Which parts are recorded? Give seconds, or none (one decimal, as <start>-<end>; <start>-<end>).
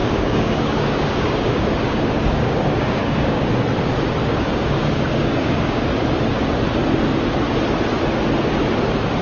3.5-4.2; 5.8-9.2